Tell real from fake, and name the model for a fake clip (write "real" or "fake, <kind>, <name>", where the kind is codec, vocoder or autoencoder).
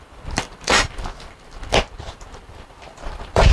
fake, vocoder, BigVGAN v2